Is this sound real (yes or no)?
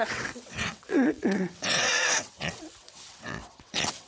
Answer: no